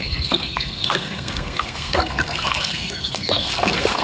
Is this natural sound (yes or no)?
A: no